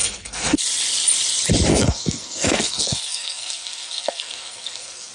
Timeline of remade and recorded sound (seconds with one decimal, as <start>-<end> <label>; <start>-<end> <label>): 0.0-0.6 remade; 0.6-1.7 recorded; 1.7-5.1 remade